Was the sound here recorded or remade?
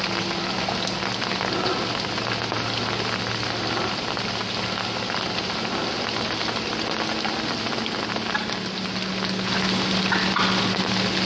recorded